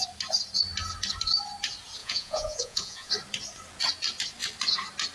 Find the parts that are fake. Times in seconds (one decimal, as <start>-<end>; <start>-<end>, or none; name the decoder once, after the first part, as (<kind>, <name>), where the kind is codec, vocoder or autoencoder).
2.0-3.1 (vocoder, Vocos)